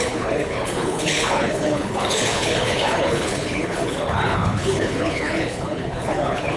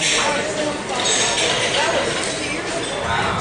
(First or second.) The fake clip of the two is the first